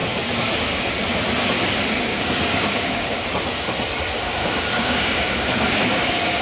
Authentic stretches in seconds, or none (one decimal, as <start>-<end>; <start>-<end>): 0.9-2.1; 3.2-4.4